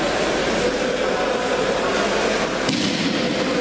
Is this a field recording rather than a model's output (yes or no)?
yes